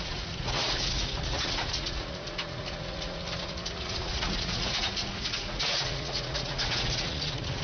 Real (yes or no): no